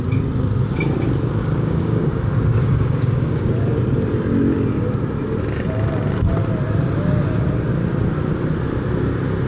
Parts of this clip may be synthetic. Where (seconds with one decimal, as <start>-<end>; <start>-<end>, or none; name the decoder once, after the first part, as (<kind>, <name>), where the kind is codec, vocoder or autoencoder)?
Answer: 1.4-3.5 (codec, DAC)